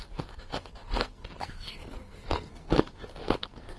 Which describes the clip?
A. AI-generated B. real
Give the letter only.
A